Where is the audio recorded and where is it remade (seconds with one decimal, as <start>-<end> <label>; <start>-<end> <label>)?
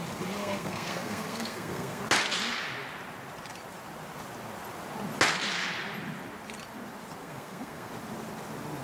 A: 0.0-0.4 recorded; 0.4-2.0 remade; 2.0-7.2 recorded; 7.2-7.9 remade; 7.9-8.8 recorded